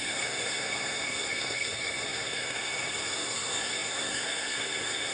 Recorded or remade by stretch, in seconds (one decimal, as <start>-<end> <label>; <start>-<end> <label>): 0.0-5.1 remade